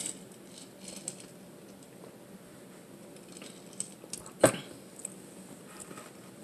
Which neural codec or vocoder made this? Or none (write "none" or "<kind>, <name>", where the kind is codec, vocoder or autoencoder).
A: none